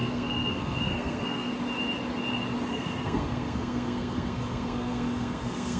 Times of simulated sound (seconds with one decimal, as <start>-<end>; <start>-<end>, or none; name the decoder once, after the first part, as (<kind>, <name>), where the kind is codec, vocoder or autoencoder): 0.0-1.5 (codec, SNAC); 2.7-5.8